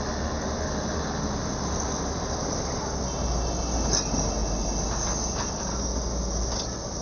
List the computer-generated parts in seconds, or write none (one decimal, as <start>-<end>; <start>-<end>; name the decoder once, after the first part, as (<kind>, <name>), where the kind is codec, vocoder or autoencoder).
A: none